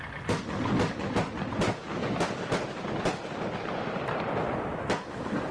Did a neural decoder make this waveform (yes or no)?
no